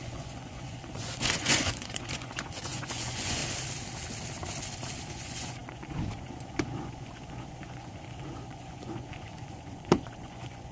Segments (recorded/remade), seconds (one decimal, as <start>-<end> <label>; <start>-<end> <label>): 0.0-3.4 remade; 3.4-5.1 recorded; 5.1-10.7 remade